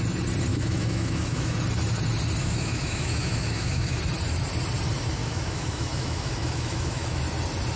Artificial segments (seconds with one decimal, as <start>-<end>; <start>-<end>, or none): 0.5-1.6; 2.4-4.0; 5.2-7.2